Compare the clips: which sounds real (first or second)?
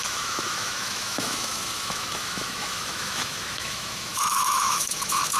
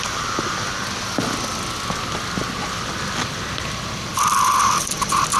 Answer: second